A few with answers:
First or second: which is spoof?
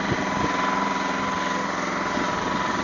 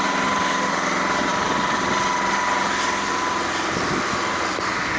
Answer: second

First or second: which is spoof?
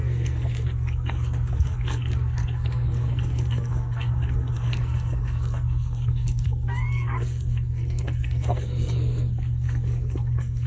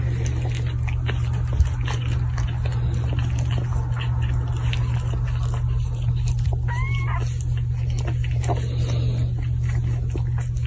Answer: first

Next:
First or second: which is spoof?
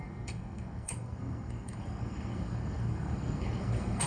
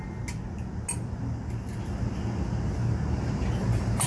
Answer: first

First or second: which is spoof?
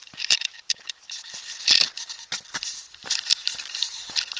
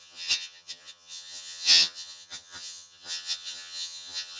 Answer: second